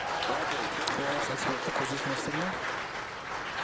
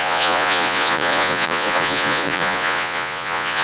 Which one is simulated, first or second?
second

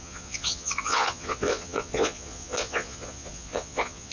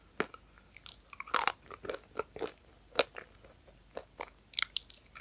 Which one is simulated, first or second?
first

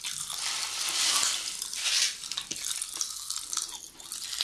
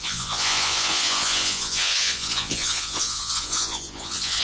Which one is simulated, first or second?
second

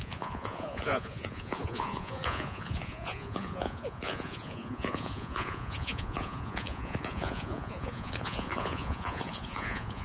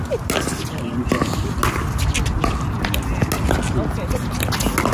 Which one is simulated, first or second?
first